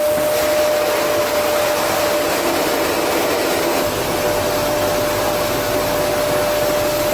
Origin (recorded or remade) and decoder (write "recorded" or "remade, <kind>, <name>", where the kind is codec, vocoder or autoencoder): recorded